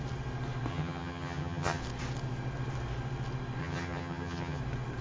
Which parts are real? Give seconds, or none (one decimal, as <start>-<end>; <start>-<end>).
0.0-0.7; 1.8-3.6; 4.6-5.0

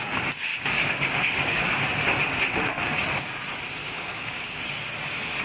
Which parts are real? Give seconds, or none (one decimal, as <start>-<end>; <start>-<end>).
0.0-0.5; 1.8-3.8; 4.6-5.4

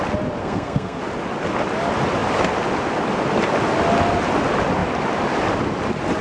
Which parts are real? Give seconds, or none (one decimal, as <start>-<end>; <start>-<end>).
0.0-0.4; 1.0-6.2

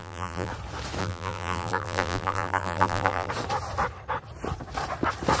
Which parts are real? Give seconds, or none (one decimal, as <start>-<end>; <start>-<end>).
0.5-1.0; 3.3-5.4